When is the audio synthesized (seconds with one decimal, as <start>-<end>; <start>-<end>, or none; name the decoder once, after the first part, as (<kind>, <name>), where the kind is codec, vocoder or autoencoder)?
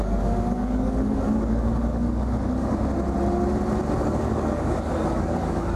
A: 0.0-2.9 (codec, DAC); 4.0-5.8